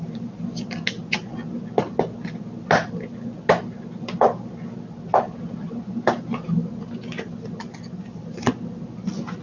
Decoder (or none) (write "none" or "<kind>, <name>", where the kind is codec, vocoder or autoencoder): none